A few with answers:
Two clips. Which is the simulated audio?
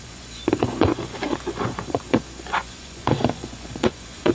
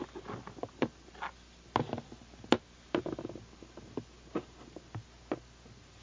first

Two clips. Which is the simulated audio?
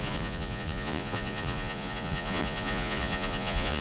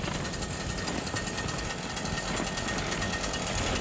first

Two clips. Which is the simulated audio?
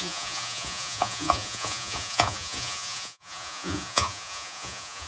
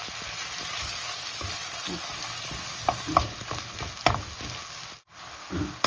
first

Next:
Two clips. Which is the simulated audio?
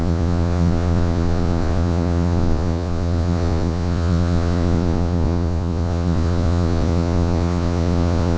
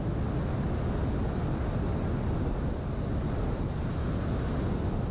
first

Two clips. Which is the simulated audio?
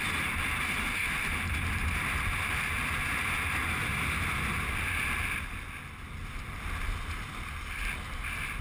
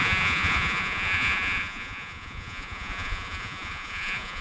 second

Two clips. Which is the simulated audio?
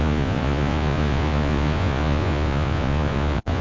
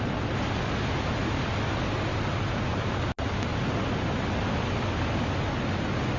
first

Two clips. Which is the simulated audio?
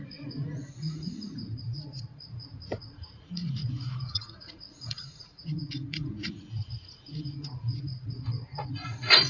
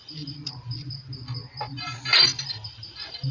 first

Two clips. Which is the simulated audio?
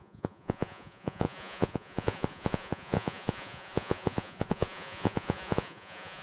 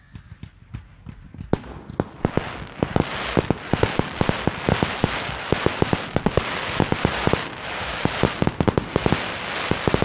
first